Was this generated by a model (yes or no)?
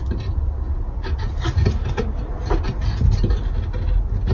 no